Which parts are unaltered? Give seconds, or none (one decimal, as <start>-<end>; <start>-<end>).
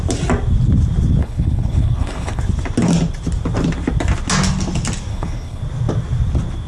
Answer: 0.0-1.2; 2.4-5.1; 5.6-6.7